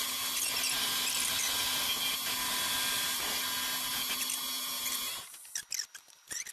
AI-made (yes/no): no